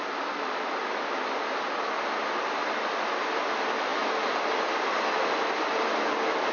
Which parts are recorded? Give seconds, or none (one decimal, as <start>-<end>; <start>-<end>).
0.0-6.5